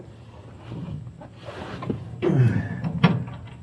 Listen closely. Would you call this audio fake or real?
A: real